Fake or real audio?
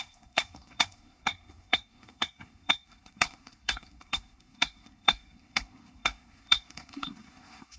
fake